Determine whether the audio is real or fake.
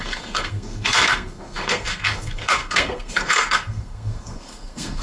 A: fake